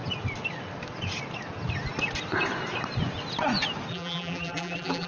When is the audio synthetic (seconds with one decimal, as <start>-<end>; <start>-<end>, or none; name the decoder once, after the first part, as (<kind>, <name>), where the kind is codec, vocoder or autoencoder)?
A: 3.9-5.1 (vocoder, BigVGAN v2)